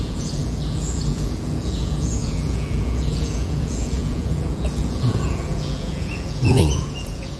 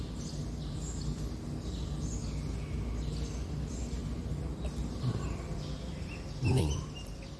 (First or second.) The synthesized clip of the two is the first